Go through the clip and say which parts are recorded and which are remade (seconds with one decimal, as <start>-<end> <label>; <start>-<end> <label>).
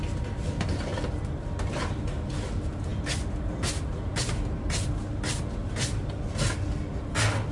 0.0-7.5 recorded